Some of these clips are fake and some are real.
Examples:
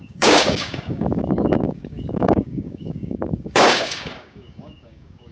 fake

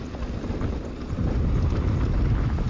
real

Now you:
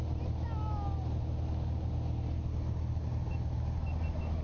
real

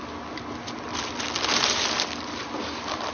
real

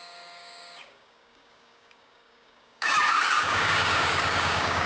fake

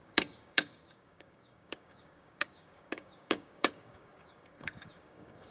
fake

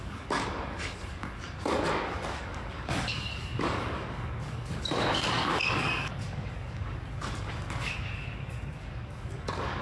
fake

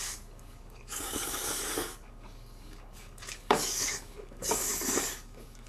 fake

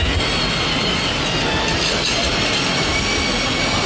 real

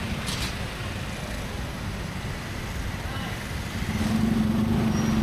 real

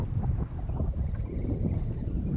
real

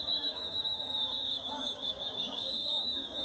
fake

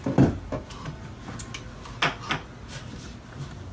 real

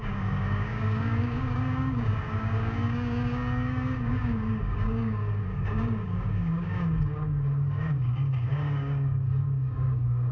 fake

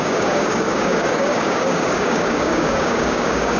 fake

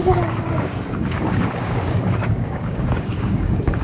fake